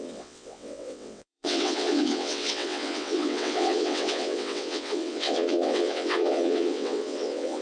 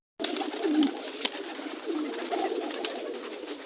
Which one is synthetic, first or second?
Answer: first